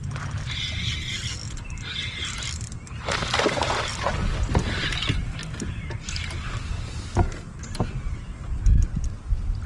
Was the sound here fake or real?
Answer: real